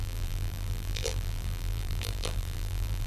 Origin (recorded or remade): remade